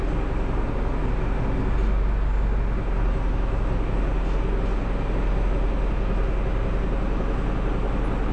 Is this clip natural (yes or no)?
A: yes